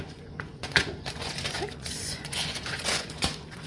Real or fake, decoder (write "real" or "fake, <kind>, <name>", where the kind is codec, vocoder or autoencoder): fake, vocoder, Vocos